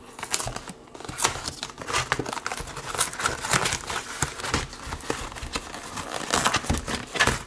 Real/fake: real